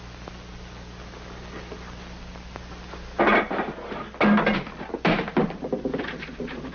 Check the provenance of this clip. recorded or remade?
recorded